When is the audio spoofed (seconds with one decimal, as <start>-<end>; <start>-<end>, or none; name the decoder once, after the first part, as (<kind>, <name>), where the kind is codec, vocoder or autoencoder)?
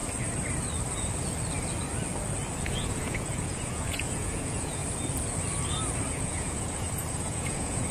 2.6-4.8 (vocoder, Vocos); 6.1-7.9